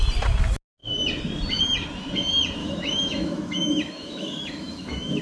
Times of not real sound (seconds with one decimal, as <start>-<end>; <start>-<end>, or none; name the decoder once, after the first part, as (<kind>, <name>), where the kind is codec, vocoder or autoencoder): 2.6-5.2 (autoencoder, DAC-VAE)